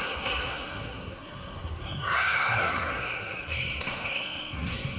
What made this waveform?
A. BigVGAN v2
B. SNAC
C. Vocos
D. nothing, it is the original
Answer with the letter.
B